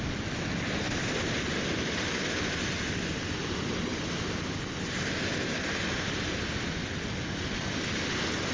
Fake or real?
real